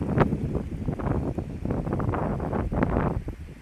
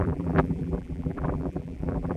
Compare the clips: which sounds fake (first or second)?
second